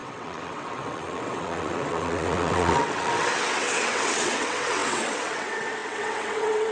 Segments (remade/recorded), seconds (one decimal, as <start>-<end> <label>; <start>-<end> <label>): 0.0-6.7 remade